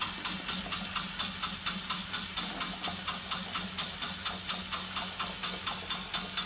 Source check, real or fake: real